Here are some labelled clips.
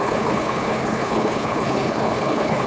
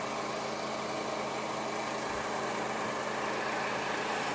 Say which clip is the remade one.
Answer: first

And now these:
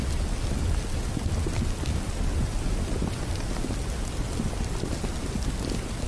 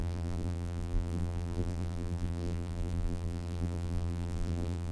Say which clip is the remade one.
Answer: second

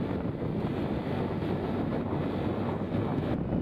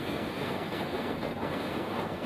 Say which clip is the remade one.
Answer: second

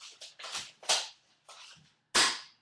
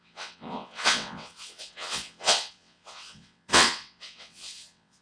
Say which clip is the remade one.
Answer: second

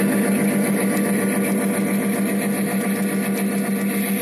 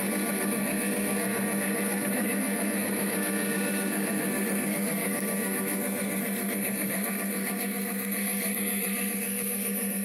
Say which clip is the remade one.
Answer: second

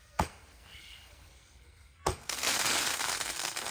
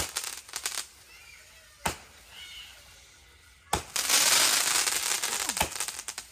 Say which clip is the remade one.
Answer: first